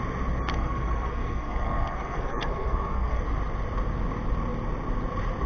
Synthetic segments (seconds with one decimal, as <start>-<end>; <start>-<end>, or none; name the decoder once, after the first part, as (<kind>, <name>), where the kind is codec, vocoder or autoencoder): 0.5-3.2 (codec, SNAC)